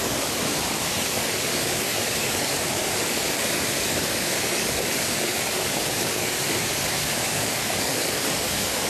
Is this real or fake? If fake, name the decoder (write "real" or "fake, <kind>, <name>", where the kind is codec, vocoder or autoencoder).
fake, codec, DAC